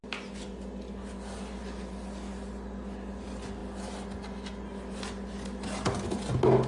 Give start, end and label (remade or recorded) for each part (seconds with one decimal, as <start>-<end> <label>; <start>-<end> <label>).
0.0-6.7 recorded